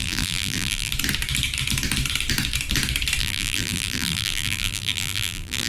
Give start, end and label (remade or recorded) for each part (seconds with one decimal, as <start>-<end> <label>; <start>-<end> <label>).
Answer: 0.0-0.9 remade; 0.9-3.2 recorded; 3.2-5.7 remade